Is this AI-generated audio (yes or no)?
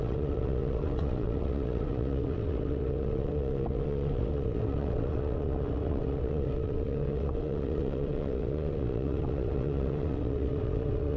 yes